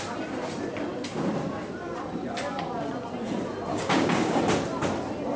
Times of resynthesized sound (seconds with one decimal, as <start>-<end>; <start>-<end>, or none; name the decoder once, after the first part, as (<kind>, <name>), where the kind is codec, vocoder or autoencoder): 3.7-4.4 (codec, DAC)